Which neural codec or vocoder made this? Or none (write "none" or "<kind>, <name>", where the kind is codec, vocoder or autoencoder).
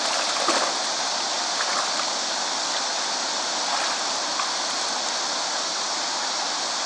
none